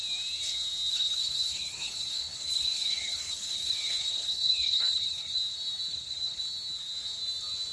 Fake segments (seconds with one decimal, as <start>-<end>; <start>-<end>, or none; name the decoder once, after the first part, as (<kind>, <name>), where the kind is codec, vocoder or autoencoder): 0.9-5.4 (codec, HILCodec); 5.9-6.4